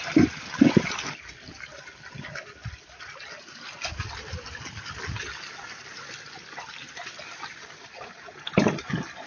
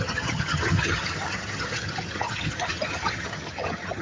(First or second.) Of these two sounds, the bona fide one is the first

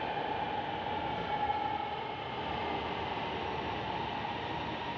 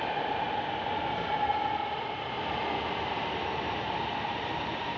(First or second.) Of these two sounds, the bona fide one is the first